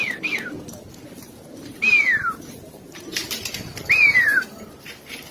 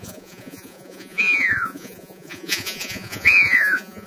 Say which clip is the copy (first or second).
second